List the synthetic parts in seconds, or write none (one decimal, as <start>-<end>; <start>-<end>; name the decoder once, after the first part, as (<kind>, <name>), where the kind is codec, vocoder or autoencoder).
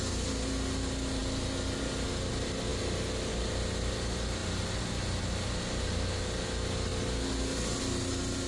none